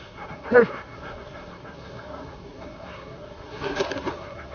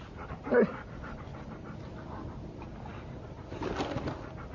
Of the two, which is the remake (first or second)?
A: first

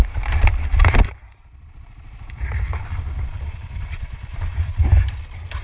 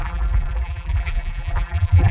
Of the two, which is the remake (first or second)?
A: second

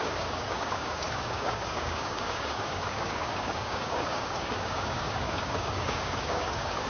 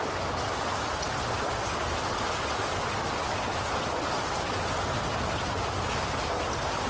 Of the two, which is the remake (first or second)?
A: first